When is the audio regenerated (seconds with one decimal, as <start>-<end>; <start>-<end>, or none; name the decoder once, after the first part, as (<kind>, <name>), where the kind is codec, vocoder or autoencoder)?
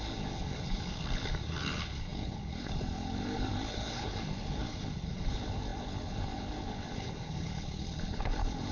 0.0-8.7 (codec, HILCodec)